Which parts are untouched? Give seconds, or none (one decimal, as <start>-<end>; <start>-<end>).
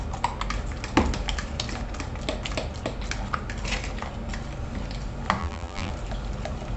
0.0-5.4; 5.9-6.8